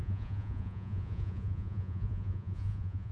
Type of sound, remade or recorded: remade